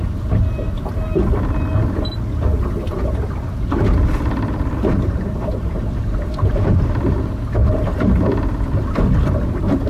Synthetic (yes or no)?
no